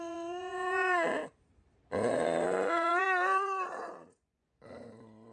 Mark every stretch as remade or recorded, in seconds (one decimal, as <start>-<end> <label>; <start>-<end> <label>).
0.0-1.2 remade; 1.2-1.9 recorded; 1.9-5.3 remade